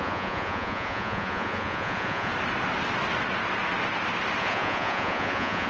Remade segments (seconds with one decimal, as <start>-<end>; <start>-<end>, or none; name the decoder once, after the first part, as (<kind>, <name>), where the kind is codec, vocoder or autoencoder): 0.0-2.3 (vocoder, Vocos); 4.4-5.7